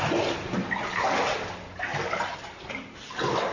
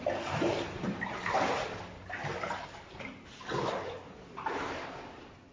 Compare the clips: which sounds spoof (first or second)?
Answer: second